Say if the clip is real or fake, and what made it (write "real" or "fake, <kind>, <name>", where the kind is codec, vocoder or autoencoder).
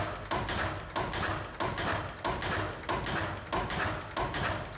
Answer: real